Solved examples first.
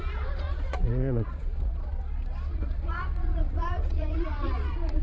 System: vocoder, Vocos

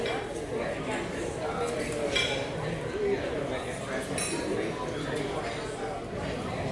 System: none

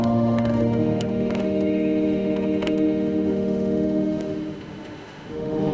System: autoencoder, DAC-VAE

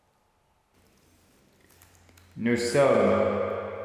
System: none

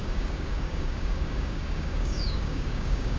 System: codec, DAC